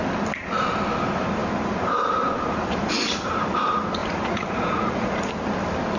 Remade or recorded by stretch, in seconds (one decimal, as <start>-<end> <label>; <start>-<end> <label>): 0.0-4.0 recorded; 4.0-5.3 remade; 5.3-6.0 recorded